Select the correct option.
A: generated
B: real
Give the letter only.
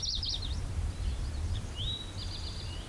B